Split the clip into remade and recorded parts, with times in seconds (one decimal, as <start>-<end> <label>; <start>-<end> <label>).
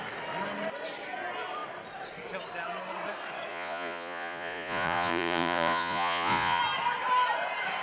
0.0-3.5 recorded; 3.5-6.6 remade; 6.6-7.8 recorded